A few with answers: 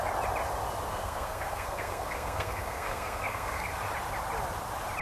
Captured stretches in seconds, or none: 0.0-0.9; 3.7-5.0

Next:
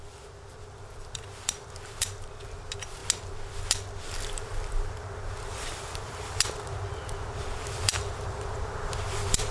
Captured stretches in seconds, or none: 3.0-3.6

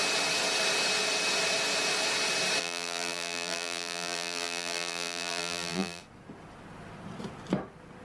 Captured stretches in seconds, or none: 0.0-2.6; 6.0-8.0